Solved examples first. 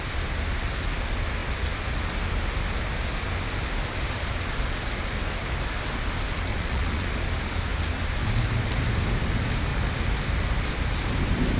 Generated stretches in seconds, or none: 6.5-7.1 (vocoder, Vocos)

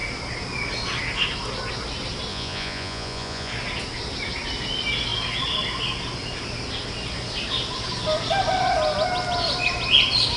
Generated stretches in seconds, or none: 2.3-3.5 (vocoder, Vocos)

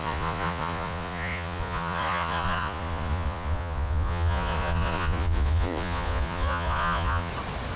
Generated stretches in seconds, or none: 0.0-7.3 (vocoder, Vocos)

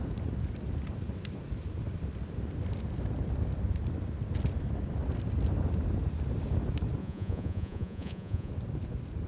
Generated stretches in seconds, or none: 7.0-8.5 (vocoder, Vocos)

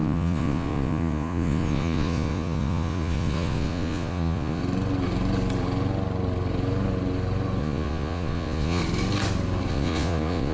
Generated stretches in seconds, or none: 0.0-4.6 (vocoder, Vocos); 7.6-8.8; 9.7-10.5

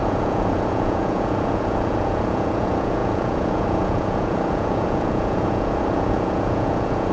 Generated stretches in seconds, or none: 0.0-7.1 (vocoder, Vocos)